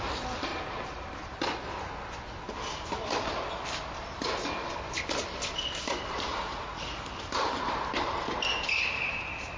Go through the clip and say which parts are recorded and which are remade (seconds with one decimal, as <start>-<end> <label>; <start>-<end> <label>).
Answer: 0.0-6.3 recorded; 6.3-7.0 remade; 7.0-9.6 recorded